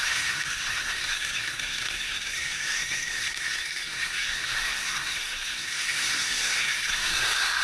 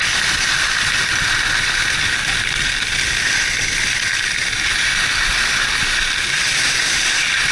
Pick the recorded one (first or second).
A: second